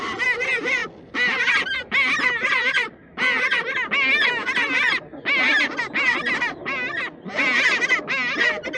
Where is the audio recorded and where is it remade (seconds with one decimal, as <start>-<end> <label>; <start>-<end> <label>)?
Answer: 0.0-8.8 recorded